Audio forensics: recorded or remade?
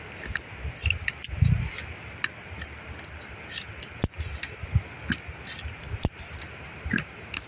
recorded